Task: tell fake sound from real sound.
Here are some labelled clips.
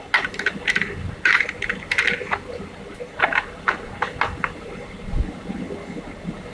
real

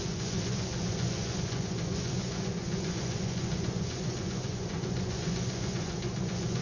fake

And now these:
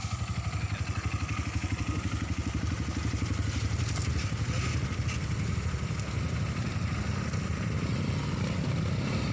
real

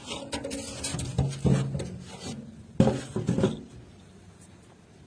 real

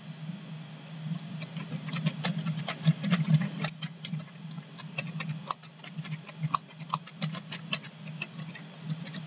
real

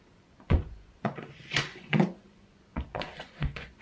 fake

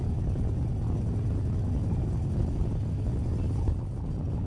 real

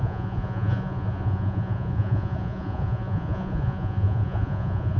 fake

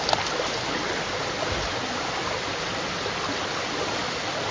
real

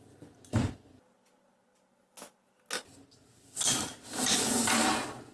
real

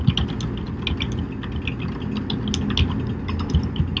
real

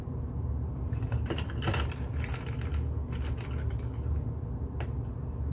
real